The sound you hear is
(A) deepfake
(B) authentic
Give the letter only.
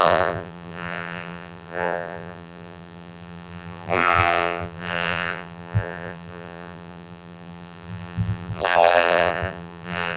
A